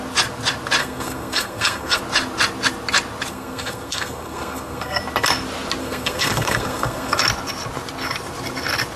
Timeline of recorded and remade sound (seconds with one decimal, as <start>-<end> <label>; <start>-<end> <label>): 0.0-0.8 recorded; 0.8-2.0 remade; 2.0-3.3 recorded; 3.3-5.0 remade; 5.0-5.8 recorded; 5.8-7.2 remade; 7.2-9.0 recorded